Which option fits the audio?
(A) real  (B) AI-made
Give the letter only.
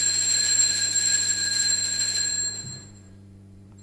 B